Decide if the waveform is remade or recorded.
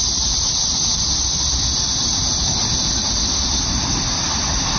remade